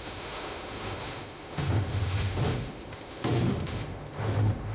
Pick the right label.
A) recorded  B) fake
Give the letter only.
B